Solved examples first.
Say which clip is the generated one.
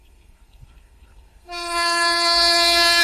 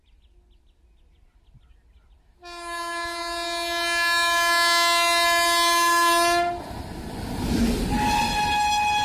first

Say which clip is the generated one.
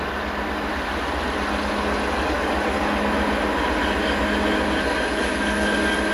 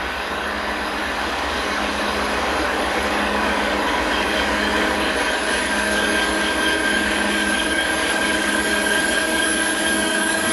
second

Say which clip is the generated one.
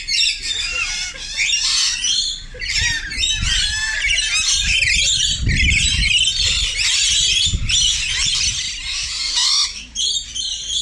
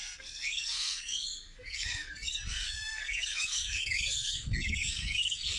second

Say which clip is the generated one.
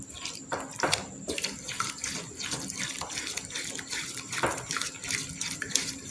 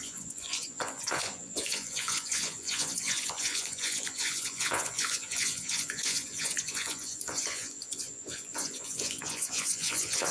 second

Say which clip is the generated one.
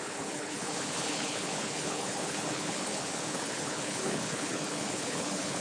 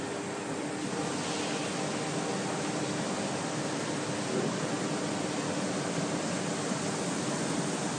first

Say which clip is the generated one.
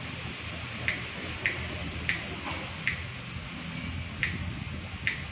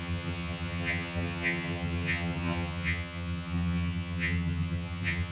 second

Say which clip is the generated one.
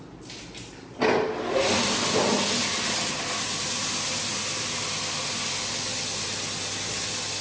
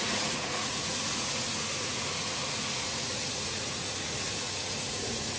second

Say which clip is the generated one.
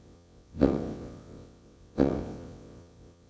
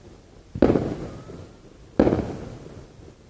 first